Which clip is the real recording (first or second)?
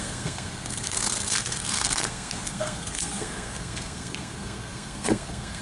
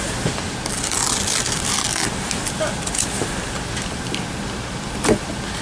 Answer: second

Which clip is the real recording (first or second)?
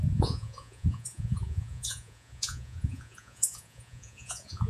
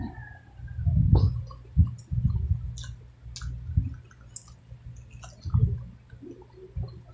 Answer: second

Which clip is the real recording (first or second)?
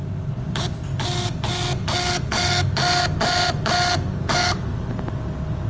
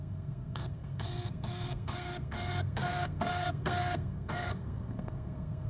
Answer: first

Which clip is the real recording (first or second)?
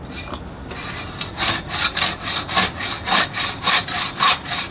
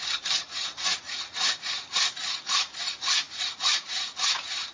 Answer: first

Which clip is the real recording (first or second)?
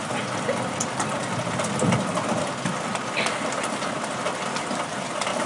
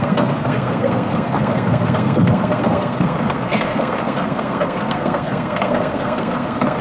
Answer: first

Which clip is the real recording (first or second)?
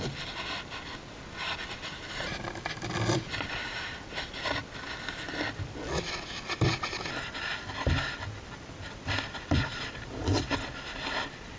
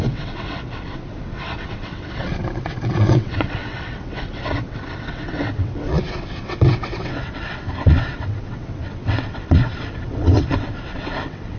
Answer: first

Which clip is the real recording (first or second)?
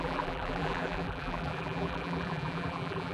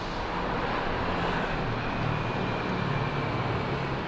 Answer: second